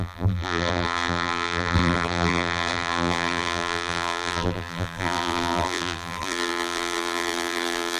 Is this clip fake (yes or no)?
yes